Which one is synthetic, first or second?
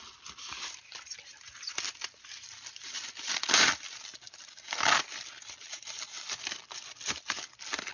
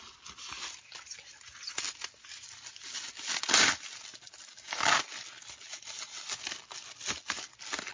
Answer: first